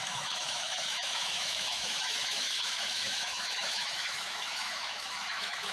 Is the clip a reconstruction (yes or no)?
yes